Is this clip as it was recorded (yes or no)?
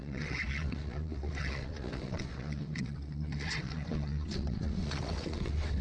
no